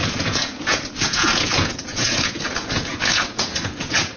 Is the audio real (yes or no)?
no